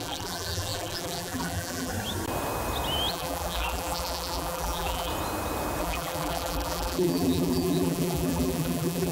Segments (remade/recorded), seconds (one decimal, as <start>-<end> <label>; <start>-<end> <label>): 0.0-1.9 remade; 1.9-3.1 recorded; 3.1-5.1 remade; 5.1-5.8 recorded; 5.8-9.1 remade